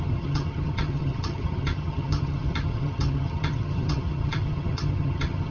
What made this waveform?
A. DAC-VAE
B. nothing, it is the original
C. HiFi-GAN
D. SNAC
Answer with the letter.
C